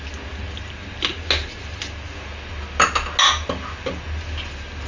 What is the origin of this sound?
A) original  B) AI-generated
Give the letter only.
A